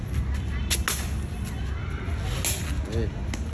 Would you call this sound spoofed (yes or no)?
no